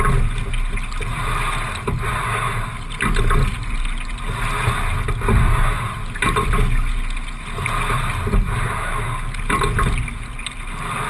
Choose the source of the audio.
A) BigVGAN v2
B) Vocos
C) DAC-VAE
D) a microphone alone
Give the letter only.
D